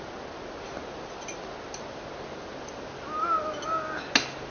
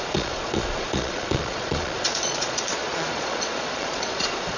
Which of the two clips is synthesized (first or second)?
second